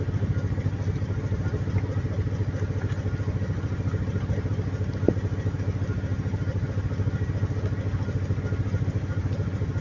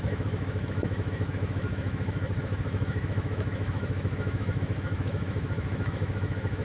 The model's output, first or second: second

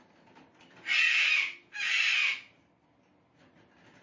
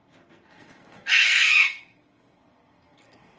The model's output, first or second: second